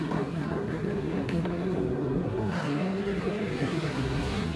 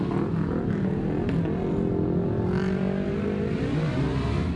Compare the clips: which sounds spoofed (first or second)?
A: first